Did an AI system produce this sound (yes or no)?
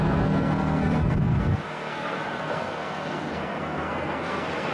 yes